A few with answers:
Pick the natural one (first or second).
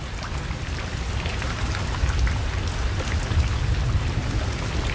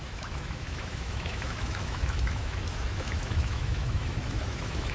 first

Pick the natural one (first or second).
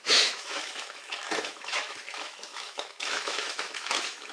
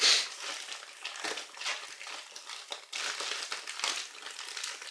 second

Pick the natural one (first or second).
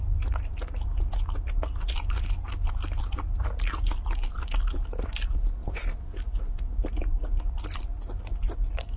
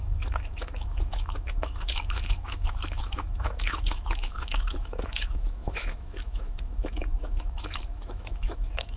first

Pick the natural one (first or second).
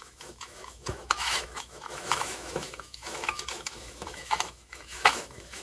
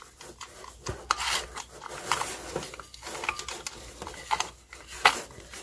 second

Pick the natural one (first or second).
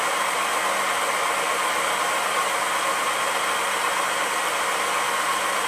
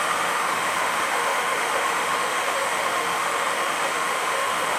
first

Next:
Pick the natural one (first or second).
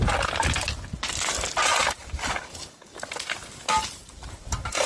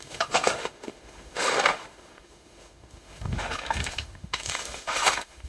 first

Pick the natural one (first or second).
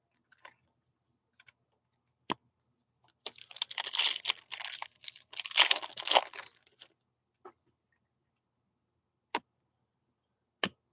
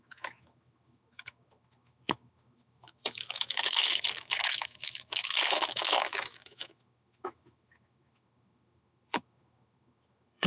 first